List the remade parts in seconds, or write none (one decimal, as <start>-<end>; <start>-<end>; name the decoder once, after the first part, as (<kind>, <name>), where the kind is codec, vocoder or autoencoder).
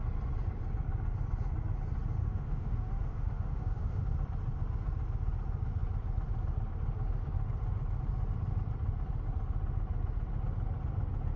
2.2-4.0 (autoencoder, DAC-VAE)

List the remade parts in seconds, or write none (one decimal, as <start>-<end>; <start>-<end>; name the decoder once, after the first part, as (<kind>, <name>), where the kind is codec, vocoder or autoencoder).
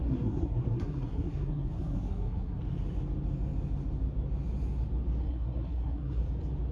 0.0-2.6 (codec, SNAC); 5.2-6.2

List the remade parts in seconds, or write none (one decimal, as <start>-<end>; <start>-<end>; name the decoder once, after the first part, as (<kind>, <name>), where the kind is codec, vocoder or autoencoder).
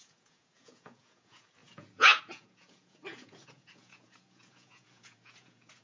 0.0-5.8 (vocoder, Vocos)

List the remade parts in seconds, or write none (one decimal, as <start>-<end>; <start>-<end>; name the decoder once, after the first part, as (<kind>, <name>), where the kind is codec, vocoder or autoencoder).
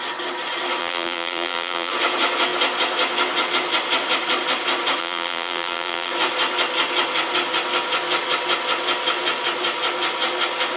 0.8-1.9 (vocoder, BigVGAN v2); 5.0-6.1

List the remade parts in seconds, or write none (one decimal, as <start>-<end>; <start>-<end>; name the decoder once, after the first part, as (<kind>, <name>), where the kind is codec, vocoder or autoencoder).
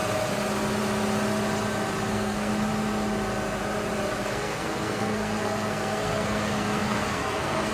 2.1-2.5 (codec, SNAC); 4.2-7.7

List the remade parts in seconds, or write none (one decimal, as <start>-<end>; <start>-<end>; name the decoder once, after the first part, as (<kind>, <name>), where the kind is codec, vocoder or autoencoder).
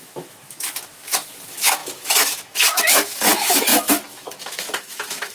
0.0-5.3 (autoencoder, DAC-VAE)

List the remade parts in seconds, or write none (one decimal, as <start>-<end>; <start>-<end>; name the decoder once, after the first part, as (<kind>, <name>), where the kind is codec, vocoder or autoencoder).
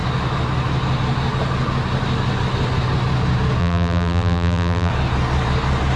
3.6-4.9 (vocoder, BigVGAN v2)